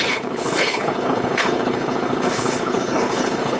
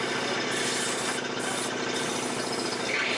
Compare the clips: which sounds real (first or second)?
second